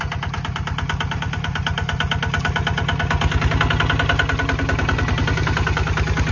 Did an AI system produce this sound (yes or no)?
no